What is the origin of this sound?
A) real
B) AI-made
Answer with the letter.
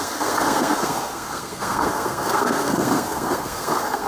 B